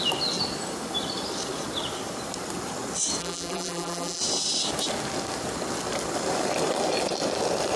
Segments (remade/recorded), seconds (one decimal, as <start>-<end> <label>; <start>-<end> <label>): 0.0-3.2 recorded; 3.2-4.2 remade; 4.2-7.8 recorded